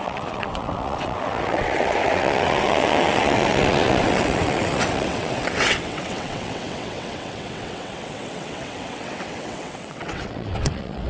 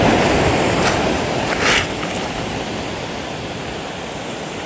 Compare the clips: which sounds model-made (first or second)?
first